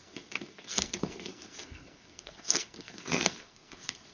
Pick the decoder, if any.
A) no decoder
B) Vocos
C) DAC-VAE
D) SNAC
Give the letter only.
D